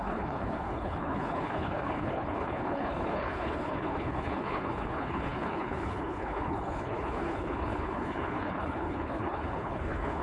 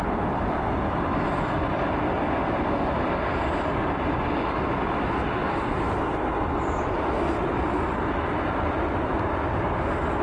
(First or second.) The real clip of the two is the second